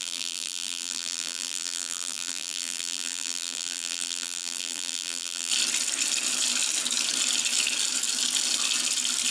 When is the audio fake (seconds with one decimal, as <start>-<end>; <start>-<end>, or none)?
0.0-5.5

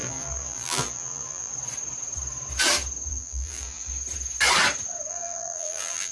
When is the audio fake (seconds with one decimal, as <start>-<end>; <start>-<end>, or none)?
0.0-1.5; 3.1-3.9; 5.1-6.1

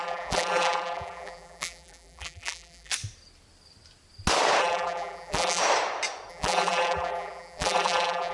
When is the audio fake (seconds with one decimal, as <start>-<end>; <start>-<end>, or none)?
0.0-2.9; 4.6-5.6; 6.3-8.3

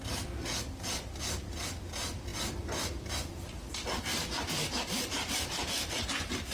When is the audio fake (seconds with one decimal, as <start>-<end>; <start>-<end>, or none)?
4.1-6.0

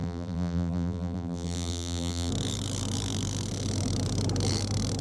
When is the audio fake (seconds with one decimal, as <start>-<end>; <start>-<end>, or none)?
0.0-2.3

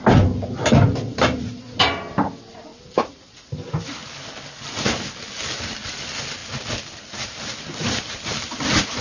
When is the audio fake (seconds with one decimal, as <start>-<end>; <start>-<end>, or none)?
1.1-1.8; 2.7-3.5